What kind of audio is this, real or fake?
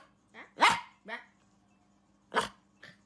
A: real